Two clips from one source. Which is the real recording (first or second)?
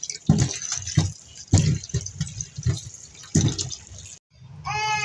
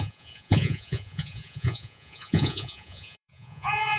first